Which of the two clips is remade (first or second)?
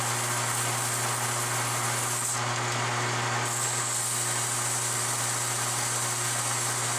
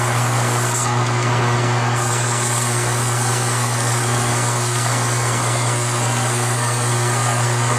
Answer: second